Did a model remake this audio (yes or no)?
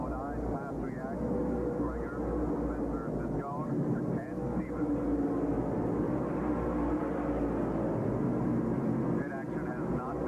no